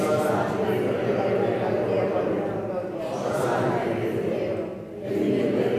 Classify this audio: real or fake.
real